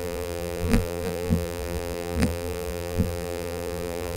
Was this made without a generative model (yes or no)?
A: no